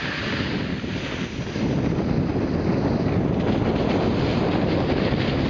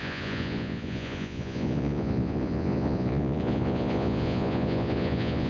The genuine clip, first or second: first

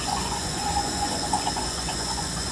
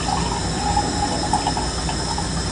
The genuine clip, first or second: second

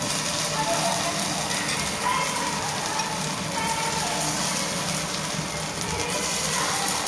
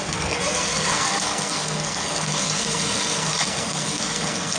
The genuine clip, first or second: first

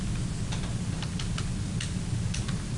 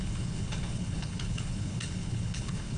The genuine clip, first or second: first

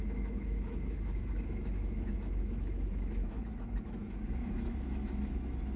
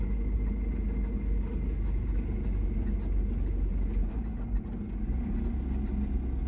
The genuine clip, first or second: second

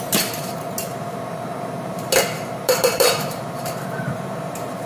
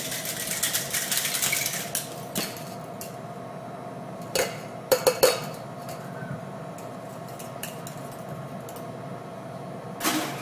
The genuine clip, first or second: second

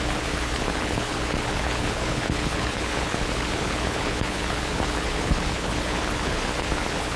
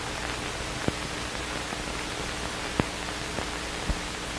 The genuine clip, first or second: second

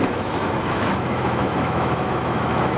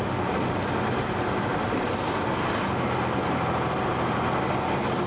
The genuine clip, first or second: second